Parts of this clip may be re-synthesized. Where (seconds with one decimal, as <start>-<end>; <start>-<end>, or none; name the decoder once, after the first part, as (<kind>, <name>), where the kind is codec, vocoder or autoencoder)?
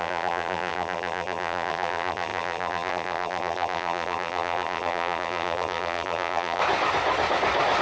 0.0-6.6 (vocoder, BigVGAN v2)